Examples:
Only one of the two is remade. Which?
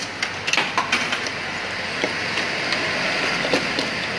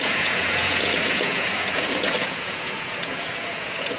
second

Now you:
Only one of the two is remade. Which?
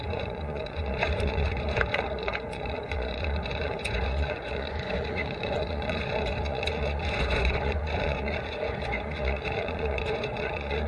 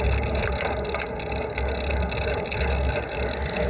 first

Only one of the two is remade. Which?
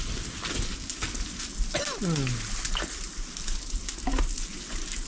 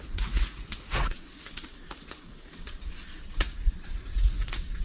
second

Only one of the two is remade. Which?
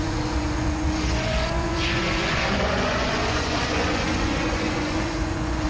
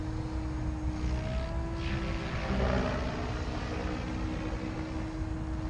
first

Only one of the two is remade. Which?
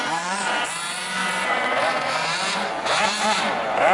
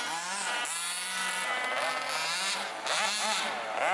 first